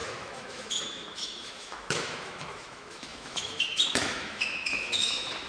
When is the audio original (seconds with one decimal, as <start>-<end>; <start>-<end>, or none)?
none